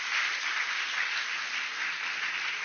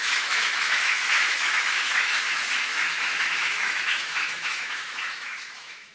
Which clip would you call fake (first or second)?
second